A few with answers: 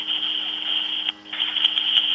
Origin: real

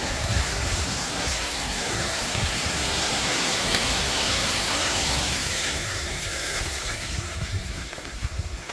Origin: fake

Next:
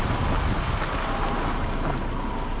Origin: real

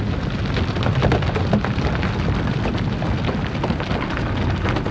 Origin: real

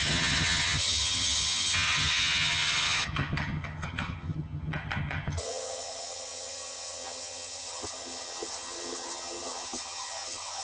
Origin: fake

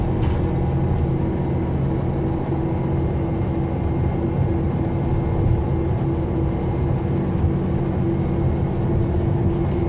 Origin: real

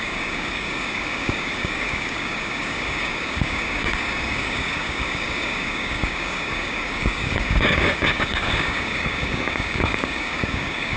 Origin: fake